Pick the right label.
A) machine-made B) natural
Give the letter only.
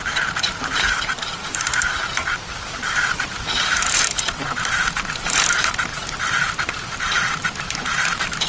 A